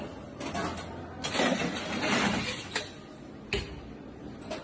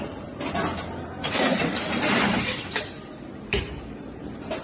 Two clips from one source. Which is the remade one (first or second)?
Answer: second